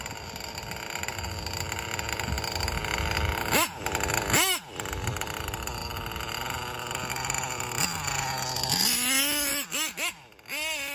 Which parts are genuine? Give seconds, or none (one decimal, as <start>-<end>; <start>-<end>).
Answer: 0.0-10.9